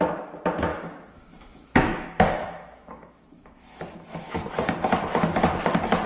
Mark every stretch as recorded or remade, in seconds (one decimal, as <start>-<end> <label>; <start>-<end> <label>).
0.0-0.7 recorded; 0.7-4.4 remade; 4.4-6.1 recorded

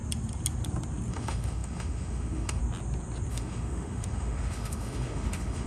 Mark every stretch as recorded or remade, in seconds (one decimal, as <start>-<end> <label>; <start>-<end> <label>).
0.0-1.1 recorded; 1.1-2.6 remade; 2.6-3.3 recorded; 3.3-5.7 remade

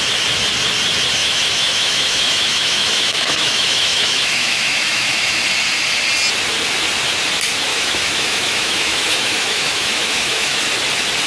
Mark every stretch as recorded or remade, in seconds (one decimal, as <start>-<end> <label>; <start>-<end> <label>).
0.0-1.2 recorded; 1.2-5.4 remade; 5.4-7.7 recorded; 7.7-10.6 remade; 10.6-11.3 recorded

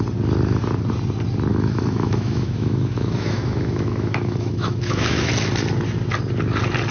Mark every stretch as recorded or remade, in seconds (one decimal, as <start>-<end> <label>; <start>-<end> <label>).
0.0-1.5 recorded; 1.5-5.3 remade; 5.3-6.9 recorded

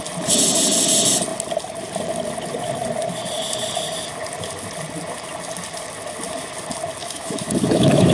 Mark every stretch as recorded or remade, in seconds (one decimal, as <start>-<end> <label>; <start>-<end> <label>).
0.0-7.0 recorded; 7.0-8.1 remade

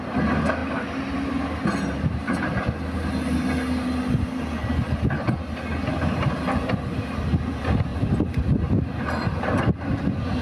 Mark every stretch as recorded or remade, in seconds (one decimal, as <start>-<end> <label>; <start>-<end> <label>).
0.0-10.4 recorded

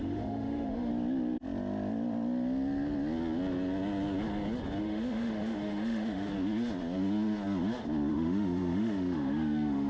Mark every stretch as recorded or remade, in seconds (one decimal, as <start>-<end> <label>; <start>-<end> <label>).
0.0-0.9 remade; 0.9-4.8 recorded; 4.8-6.3 remade; 6.3-8.1 recorded; 8.1-9.9 remade